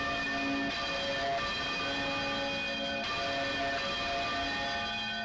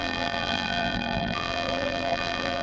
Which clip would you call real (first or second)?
first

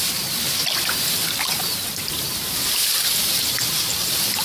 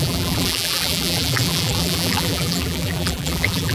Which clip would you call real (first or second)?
first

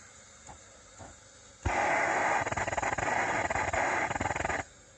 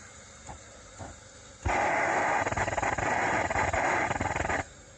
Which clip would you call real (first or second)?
first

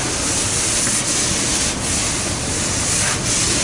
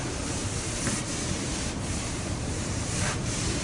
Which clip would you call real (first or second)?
first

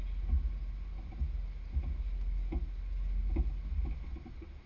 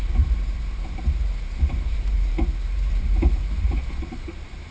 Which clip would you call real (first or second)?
first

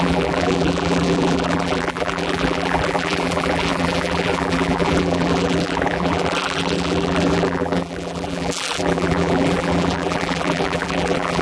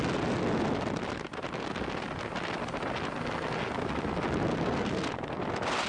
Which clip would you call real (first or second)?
second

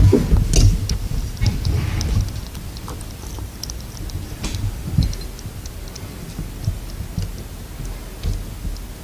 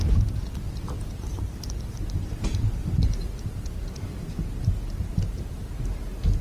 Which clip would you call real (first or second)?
first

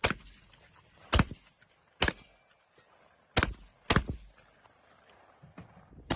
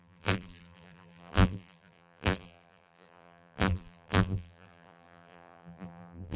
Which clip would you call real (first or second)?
first